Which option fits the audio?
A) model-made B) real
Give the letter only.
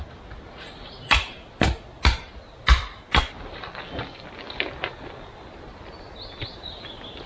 B